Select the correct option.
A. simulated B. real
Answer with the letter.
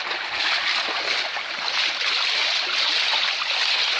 B